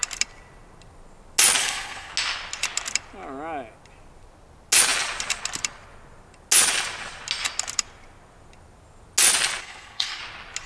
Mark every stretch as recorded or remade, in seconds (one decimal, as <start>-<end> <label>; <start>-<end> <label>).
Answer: 0.0-1.6 recorded; 1.6-2.1 remade; 2.1-9.6 recorded; 9.6-10.2 remade; 10.2-10.7 recorded